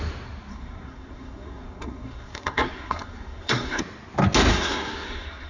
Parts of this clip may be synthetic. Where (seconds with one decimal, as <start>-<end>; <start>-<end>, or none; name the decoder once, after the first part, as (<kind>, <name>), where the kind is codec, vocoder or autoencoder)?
0.5-3.8 (codec, SNAC); 4.5-5.5